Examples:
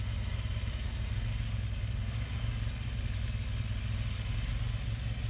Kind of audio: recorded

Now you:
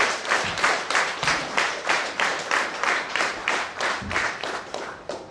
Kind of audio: remade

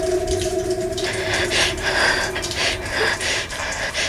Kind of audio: remade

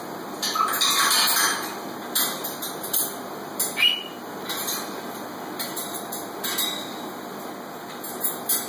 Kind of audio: recorded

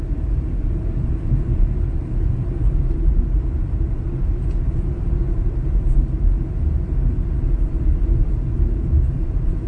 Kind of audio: remade